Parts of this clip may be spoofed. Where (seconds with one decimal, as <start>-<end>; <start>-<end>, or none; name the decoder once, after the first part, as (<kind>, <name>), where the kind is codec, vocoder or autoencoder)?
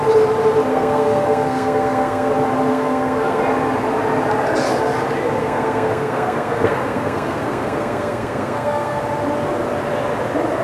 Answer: 0.7-2.3 (codec, SNAC); 2.7-3.4; 5.4-9.0